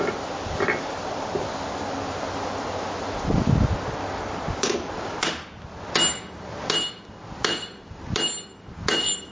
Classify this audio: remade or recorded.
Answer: recorded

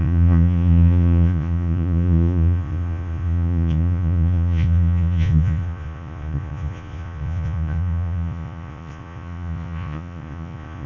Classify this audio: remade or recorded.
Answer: remade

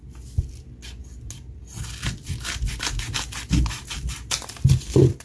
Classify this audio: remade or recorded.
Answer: recorded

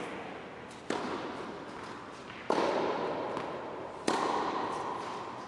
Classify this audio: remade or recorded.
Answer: recorded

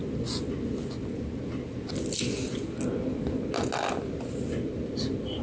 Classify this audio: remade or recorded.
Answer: recorded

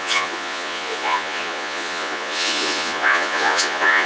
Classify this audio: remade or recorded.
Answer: remade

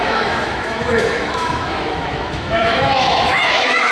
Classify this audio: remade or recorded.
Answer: remade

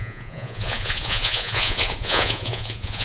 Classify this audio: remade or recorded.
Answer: remade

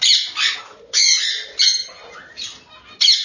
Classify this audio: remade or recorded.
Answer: recorded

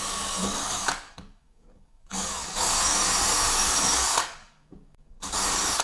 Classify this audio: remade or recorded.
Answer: remade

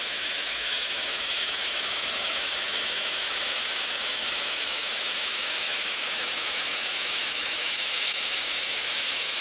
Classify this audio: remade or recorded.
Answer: remade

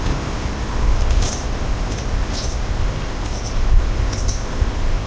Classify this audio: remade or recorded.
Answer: remade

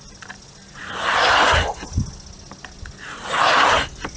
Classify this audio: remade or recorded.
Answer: recorded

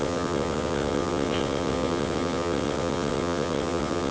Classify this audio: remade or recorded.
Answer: remade